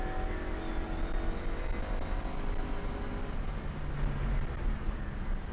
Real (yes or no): yes